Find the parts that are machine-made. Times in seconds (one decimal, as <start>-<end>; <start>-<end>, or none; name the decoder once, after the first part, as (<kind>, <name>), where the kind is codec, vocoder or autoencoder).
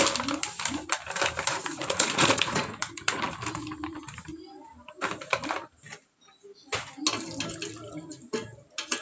1.5-3.2 (vocoder, Vocos)